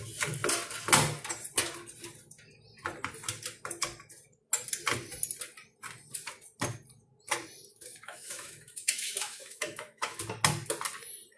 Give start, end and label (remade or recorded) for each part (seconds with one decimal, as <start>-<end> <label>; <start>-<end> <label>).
0.0-7.7 recorded; 7.7-10.2 remade; 10.2-11.4 recorded